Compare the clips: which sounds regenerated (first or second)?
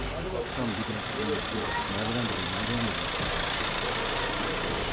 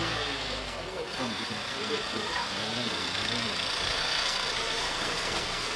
second